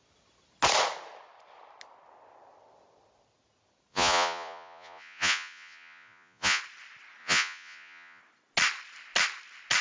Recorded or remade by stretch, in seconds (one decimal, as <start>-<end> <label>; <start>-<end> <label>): 0.0-3.9 recorded; 3.9-6.6 remade; 6.6-7.2 recorded; 7.2-8.2 remade; 8.2-9.8 recorded